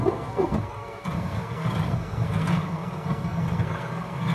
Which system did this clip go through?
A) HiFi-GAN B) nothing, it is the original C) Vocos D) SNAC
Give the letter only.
D